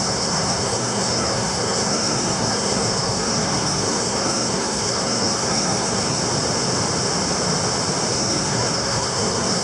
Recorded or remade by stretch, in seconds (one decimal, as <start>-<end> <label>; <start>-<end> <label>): 0.0-6.2 remade; 6.2-8.1 recorded; 8.1-9.6 remade